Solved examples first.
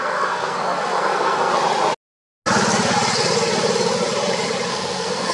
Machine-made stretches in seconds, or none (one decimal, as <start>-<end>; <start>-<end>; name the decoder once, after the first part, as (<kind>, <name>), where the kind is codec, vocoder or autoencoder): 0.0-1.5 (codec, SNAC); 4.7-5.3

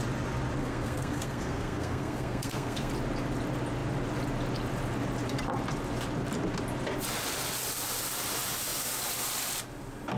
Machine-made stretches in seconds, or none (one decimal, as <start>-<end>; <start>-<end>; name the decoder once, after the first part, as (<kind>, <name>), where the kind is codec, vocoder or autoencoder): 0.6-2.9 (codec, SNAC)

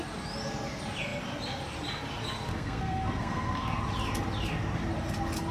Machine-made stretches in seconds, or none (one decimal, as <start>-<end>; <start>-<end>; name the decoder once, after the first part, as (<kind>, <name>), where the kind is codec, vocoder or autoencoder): 2.5-3.8 (codec, SNAC)